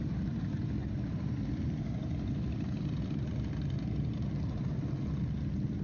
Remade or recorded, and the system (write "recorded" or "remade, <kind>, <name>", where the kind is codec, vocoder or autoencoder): recorded